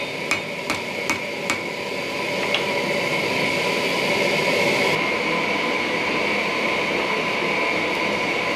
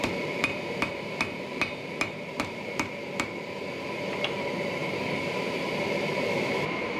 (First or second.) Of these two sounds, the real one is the first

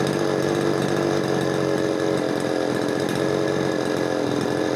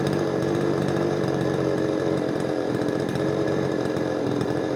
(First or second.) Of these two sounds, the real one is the first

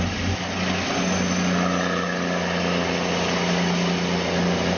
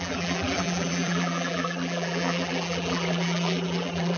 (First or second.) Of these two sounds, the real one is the first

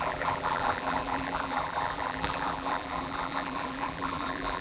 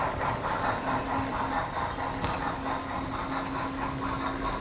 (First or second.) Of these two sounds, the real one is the second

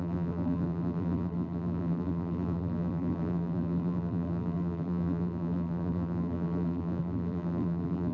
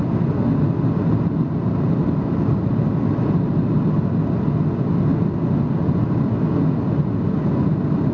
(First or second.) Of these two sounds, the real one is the second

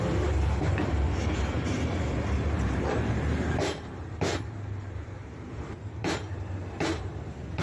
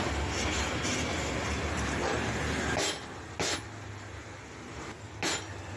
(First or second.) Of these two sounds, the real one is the second